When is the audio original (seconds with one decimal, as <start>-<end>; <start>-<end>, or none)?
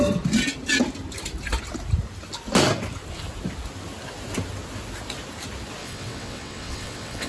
0.0-5.8